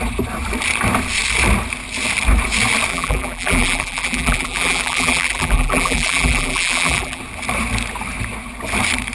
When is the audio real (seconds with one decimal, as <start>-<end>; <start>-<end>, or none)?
0.0-2.9; 7.2-9.1